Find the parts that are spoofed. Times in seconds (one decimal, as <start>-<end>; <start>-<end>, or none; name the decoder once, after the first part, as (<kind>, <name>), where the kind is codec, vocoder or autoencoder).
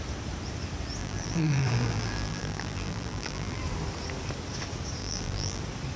1.0-3.6 (vocoder, BigVGAN v2); 5.0-5.6